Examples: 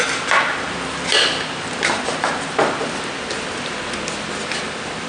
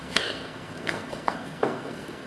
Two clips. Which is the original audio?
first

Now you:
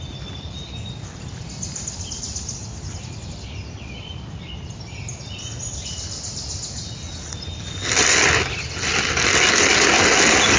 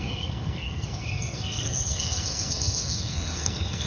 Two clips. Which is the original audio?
first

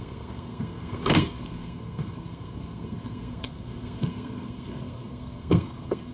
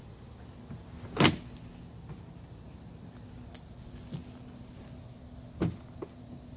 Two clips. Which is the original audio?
second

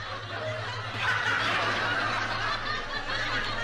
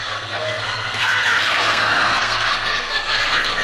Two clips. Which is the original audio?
first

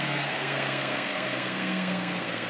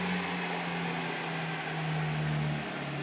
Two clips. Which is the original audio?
second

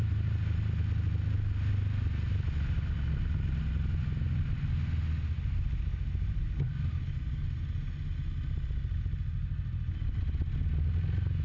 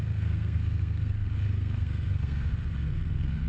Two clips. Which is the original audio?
first